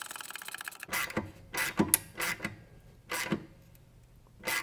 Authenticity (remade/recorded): recorded